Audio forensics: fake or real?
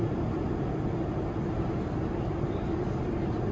real